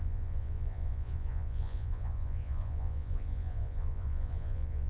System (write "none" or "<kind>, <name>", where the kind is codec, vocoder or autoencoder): vocoder, Vocos